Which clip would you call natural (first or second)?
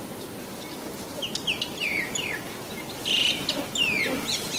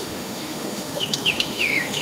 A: first